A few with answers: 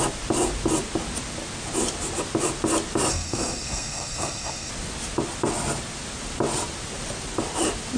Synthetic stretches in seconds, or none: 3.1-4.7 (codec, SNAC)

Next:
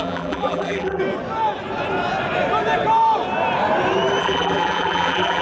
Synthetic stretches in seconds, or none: 0.0-1.0 (vocoder, BigVGAN v2); 4.2-5.4

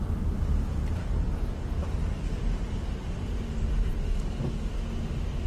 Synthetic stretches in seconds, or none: 1.0-3.0 (codec, DAC); 3.9-4.7

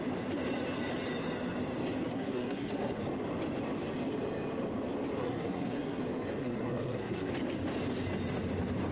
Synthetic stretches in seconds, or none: 2.1-3.0 (codec, SNAC); 5.2-6.0; 6.4-7.3